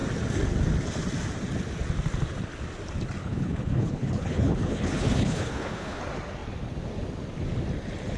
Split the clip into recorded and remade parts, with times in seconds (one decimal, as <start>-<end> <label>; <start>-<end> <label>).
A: 0.0-3.2 recorded; 3.2-6.0 remade; 6.0-8.2 recorded